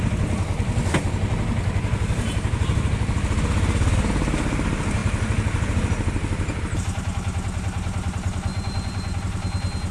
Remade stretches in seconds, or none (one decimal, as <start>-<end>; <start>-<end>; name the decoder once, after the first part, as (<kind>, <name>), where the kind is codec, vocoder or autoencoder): 8.5-9.2 (vocoder, Vocos)